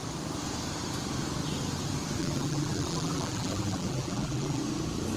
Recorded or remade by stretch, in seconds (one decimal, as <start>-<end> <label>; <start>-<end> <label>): 0.0-2.2 recorded; 2.2-4.6 remade; 4.6-5.2 recorded